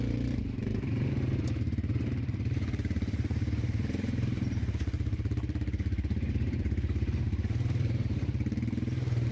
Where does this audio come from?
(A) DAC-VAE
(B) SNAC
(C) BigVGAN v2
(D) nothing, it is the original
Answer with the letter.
C